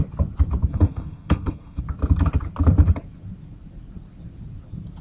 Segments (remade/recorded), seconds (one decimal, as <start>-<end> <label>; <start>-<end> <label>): 0.0-0.7 recorded; 0.7-1.8 remade; 1.8-5.0 recorded